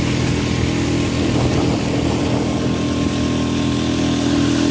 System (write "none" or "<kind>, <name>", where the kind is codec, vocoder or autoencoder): none